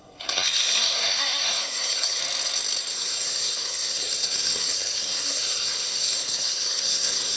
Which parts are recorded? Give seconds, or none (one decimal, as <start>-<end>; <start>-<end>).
2.2-2.9